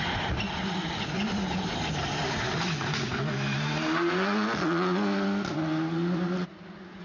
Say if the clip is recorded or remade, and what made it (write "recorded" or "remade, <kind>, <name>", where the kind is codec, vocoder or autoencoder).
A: recorded